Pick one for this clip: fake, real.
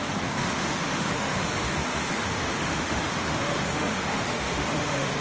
fake